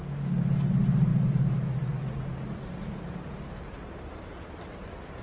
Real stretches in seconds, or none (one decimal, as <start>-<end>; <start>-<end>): 0.0-5.2